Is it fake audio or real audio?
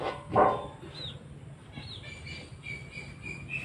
real